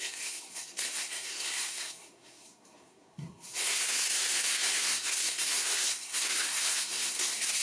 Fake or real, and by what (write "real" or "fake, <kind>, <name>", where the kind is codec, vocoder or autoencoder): fake, codec, SNAC